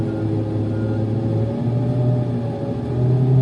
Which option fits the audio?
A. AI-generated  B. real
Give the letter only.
B